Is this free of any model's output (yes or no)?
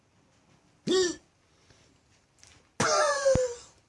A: yes